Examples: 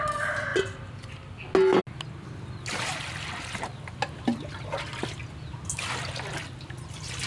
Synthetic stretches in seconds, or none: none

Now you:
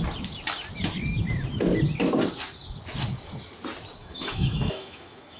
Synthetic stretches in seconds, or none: 4.0-5.4 (autoencoder, DAC-VAE)

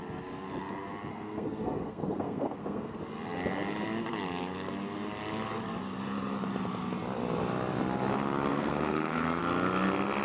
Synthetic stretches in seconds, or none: 1.1-3.0 (codec, SNAC); 8.5-9.4